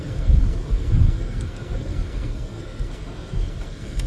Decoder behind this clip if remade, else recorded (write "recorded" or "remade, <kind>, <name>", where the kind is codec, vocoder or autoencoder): remade, codec, SNAC